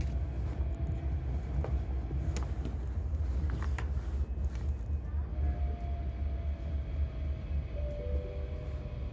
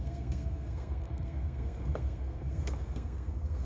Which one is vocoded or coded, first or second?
second